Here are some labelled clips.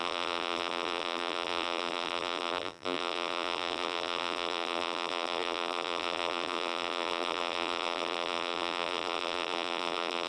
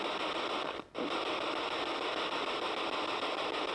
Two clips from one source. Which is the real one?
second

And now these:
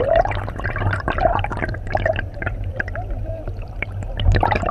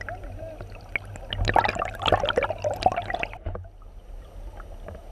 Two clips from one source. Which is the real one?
second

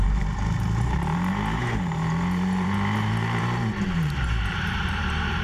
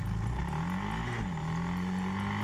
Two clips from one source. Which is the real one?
second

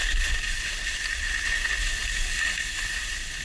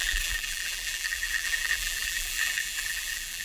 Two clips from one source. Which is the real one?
first